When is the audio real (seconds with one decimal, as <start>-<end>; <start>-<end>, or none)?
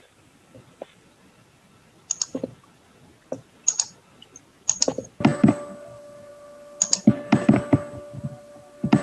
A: 0.0-9.0